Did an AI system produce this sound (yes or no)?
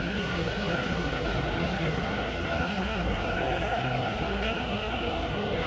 yes